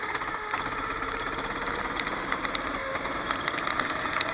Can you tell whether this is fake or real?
real